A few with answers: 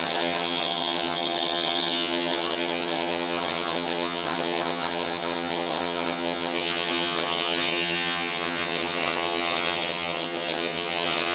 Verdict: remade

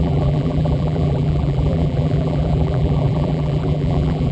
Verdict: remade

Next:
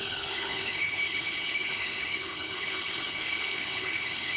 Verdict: remade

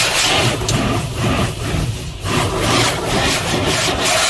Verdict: recorded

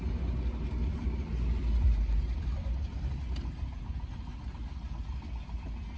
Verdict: recorded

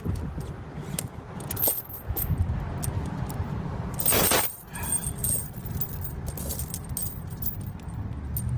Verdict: recorded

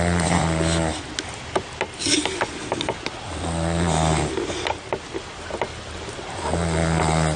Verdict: recorded